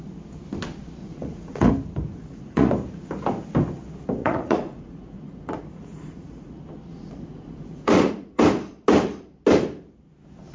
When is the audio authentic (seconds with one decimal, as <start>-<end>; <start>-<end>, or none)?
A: 0.0-1.0; 1.7-2.1; 2.7-4.2; 6.5-6.9; 8.4-10.5